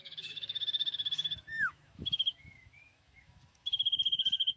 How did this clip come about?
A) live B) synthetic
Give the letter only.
B